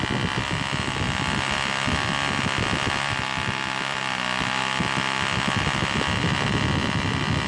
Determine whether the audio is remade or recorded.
recorded